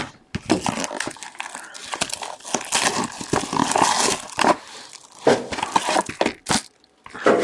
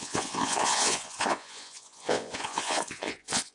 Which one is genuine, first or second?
first